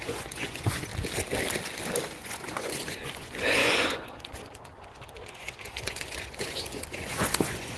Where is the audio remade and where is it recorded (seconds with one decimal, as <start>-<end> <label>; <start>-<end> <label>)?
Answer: 0.0-0.9 remade; 0.9-2.2 recorded; 2.2-7.8 remade